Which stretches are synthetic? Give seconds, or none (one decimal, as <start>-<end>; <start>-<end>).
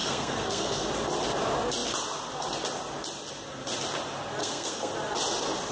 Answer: 0.0-0.9; 4.4-4.9